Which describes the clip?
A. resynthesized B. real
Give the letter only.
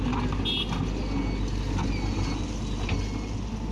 B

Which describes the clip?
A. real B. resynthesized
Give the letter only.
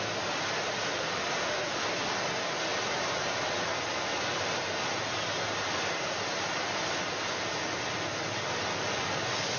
A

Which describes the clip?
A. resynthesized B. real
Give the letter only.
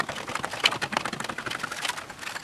B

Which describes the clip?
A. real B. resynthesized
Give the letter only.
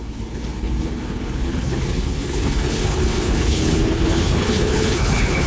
B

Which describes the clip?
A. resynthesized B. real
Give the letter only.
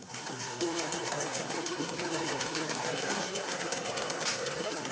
A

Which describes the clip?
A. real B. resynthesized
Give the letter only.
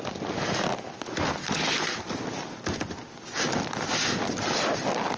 A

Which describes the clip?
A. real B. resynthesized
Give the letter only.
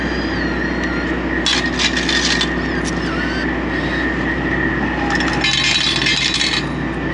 A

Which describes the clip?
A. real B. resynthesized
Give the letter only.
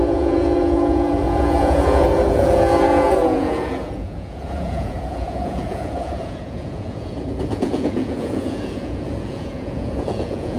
B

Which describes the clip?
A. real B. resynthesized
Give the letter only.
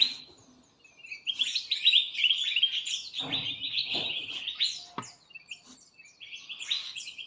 A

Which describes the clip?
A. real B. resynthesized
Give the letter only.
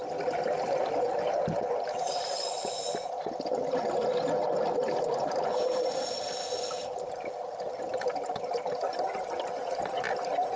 A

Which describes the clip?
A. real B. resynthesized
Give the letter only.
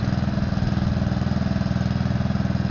A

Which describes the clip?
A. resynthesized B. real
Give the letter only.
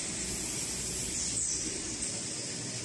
B